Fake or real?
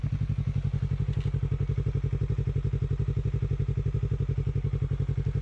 real